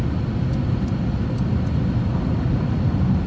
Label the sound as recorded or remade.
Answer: recorded